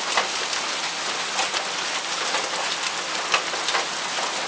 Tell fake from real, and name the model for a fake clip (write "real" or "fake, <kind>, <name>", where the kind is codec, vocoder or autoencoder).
real